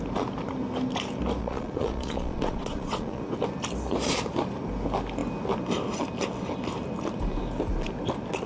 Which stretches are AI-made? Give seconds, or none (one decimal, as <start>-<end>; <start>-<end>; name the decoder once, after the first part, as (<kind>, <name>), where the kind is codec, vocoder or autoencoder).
1.4-3.2 (vocoder, Vocos)